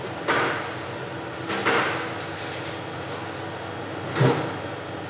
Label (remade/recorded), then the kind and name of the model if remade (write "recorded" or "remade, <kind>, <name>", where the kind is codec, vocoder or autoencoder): recorded